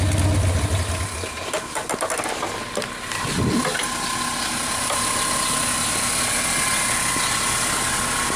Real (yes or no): yes